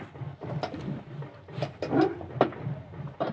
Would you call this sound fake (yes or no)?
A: no